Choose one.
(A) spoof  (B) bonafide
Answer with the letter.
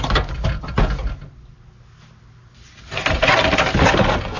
B